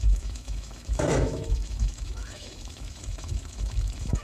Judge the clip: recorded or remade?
remade